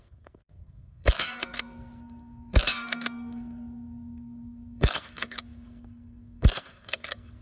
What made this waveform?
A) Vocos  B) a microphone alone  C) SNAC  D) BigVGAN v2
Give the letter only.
C